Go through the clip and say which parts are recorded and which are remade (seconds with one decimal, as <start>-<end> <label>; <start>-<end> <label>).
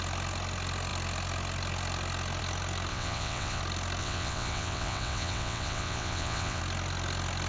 0.0-2.9 recorded; 2.9-3.6 remade; 3.6-4.0 recorded; 4.0-6.6 remade; 6.6-7.5 recorded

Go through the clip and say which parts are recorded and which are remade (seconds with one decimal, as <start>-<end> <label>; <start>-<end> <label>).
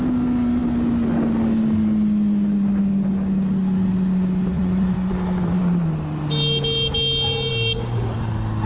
0.0-4.5 recorded; 4.5-5.1 remade; 5.1-8.7 recorded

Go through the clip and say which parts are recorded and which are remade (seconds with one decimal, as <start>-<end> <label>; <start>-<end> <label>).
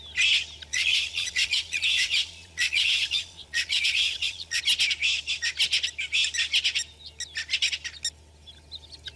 0.0-0.7 recorded; 0.7-4.6 remade; 4.6-9.2 recorded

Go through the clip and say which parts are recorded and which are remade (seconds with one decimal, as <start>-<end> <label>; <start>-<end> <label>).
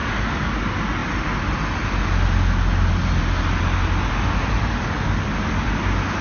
0.0-6.2 recorded